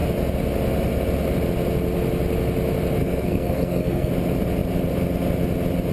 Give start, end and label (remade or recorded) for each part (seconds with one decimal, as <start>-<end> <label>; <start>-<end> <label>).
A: 0.0-3.0 recorded; 3.0-4.1 remade; 4.1-5.9 recorded